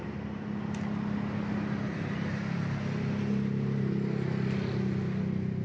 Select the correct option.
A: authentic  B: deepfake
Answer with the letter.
A